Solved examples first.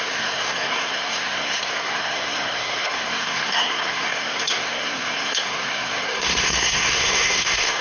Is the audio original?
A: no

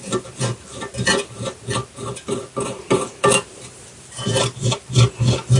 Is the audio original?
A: yes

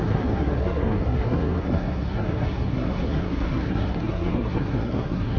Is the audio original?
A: no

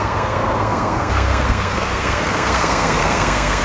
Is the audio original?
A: no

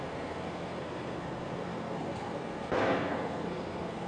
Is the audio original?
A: no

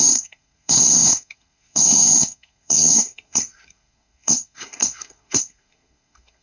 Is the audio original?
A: no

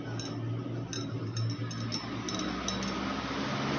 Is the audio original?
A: yes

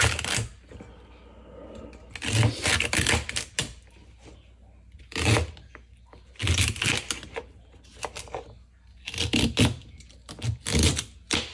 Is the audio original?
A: yes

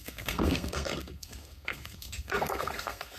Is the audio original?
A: no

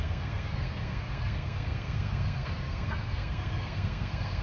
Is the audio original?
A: no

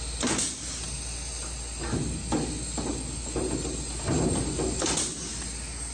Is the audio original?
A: yes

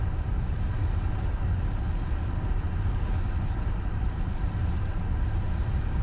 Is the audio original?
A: yes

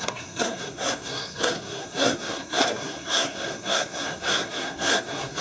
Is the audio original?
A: no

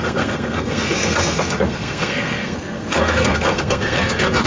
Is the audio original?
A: no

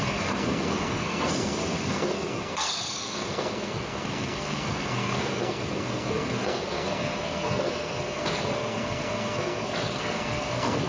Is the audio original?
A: no